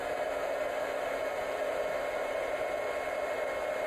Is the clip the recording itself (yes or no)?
yes